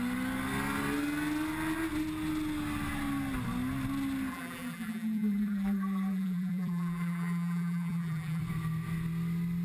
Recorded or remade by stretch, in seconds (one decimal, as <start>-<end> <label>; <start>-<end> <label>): 0.0-4.3 recorded; 4.3-8.4 remade; 8.4-9.6 recorded